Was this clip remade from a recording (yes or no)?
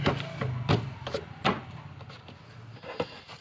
no